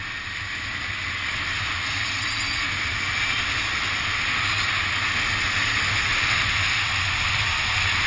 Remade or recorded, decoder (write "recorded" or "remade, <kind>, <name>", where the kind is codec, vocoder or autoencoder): recorded